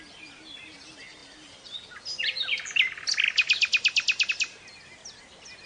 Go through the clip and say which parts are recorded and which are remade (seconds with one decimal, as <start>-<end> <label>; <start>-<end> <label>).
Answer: 0.0-5.7 recorded